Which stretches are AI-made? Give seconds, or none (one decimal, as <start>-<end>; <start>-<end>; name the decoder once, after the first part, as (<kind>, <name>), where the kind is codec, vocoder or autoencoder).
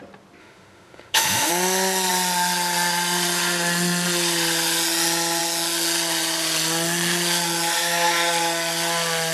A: 0.4-1.5 (autoencoder, DAC-VAE)